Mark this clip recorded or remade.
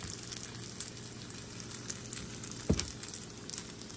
recorded